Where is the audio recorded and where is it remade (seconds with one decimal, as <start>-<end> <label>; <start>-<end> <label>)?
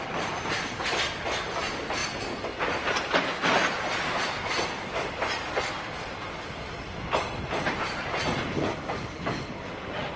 0.0-10.2 recorded